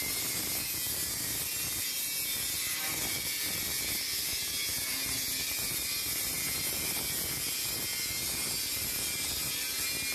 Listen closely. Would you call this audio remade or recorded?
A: recorded